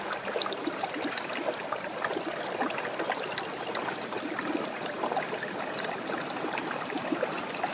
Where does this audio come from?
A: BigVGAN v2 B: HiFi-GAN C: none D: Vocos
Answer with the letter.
C